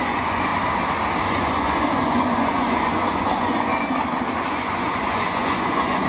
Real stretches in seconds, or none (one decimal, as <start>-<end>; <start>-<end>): 0.5-1.3; 3.7-4.5